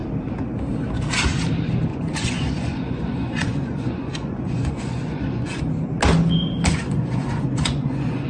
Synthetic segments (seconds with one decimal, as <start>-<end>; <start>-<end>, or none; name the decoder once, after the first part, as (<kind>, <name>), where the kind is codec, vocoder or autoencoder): 1.9-5.6 (vocoder, Vocos); 6.7-8.3